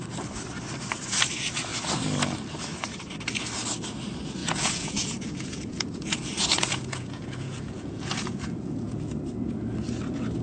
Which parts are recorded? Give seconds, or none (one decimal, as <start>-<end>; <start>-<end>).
0.0-4.4; 9.0-10.4